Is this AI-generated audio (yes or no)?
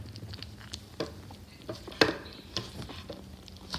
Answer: no